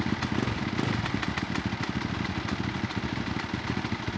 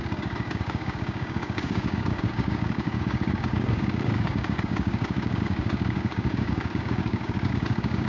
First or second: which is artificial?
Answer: second